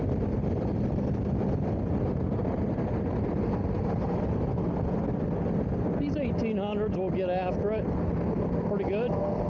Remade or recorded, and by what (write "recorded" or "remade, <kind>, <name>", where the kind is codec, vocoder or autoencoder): recorded